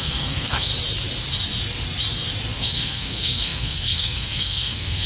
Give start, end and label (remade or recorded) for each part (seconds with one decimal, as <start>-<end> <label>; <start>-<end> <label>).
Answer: 0.0-0.7 remade; 0.7-2.6 recorded; 2.6-5.1 remade